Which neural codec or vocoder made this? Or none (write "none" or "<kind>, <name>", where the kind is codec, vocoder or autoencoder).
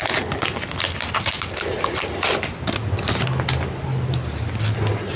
none